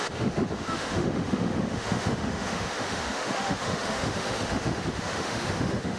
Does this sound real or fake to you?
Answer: fake